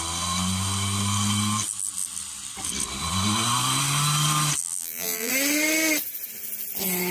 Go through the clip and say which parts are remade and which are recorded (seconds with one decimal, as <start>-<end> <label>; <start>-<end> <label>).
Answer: 0.0-4.6 recorded; 4.6-5.3 remade; 5.3-7.1 recorded

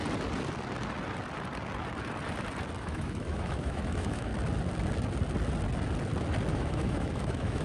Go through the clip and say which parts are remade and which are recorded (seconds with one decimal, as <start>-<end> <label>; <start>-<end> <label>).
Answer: 0.0-2.8 recorded; 2.8-4.3 remade; 4.3-6.5 recorded; 6.5-7.6 remade

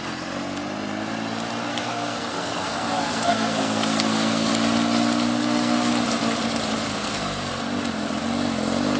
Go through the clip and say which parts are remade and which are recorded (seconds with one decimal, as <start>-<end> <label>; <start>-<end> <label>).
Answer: 0.0-1.7 recorded; 1.7-4.5 remade; 4.5-5.4 recorded; 5.4-5.9 remade; 5.9-6.9 recorded; 6.9-7.5 remade; 7.5-9.0 recorded

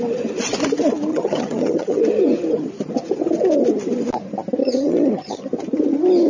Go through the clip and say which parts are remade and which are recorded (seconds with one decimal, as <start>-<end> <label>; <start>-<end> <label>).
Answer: 0.0-1.1 recorded; 1.1-2.0 remade; 2.0-4.6 recorded; 4.6-5.4 remade; 5.4-6.3 recorded

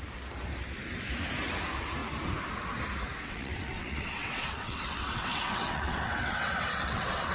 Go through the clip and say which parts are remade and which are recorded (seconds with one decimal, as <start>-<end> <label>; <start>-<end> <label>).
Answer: 0.0-3.2 recorded; 3.2-7.3 remade